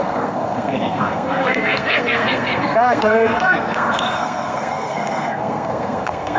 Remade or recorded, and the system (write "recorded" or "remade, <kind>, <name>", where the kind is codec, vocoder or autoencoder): remade, codec, SNAC